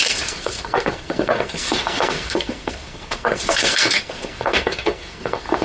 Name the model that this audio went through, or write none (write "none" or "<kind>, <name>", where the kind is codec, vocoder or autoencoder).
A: codec, SNAC